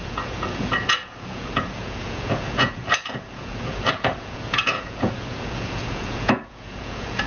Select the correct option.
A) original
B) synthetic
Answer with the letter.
B